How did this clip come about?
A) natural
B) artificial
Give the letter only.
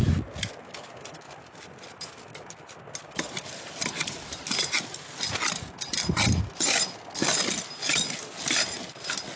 A